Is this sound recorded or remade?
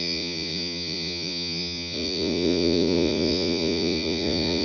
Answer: remade